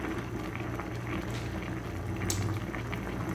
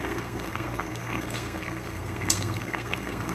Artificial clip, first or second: second